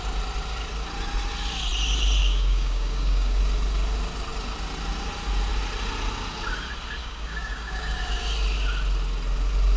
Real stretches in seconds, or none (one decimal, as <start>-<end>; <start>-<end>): 0.0-2.2; 3.4-7.0; 8.0-9.8